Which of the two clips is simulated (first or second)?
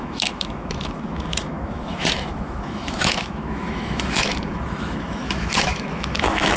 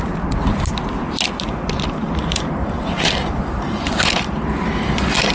first